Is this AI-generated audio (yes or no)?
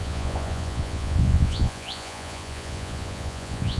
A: yes